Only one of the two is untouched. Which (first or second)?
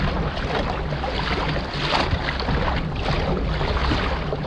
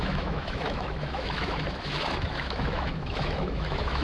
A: first